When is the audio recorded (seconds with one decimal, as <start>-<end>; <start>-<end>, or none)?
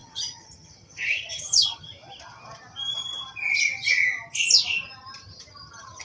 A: 1.9-5.5